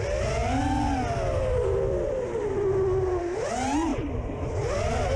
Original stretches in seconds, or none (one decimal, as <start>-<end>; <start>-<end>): 0.0-5.2